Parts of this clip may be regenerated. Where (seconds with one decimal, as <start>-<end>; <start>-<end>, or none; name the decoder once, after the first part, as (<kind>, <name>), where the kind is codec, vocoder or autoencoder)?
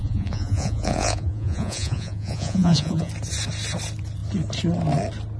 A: 0.0-3.1 (vocoder, Vocos)